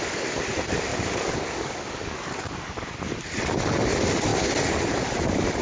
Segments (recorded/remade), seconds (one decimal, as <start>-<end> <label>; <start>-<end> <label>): 0.0-0.9 recorded; 0.9-2.9 remade; 2.9-5.6 recorded